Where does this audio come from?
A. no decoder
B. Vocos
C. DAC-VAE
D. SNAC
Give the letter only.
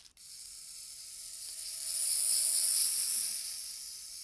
A